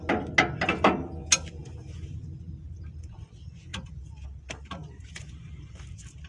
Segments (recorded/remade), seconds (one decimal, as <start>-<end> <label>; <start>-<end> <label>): 0.0-1.6 recorded; 1.6-3.1 remade; 3.1-3.7 recorded; 3.7-6.3 remade